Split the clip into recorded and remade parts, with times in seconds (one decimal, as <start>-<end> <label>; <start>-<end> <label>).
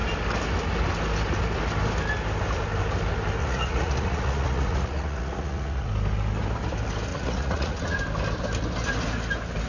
0.0-3.4 recorded; 3.4-5.9 remade; 5.9-7.1 recorded; 7.1-8.0 remade; 8.0-9.7 recorded